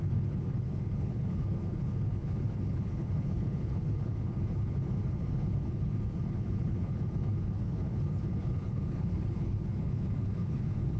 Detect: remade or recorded remade